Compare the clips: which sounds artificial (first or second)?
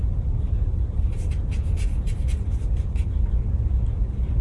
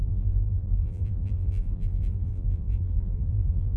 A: second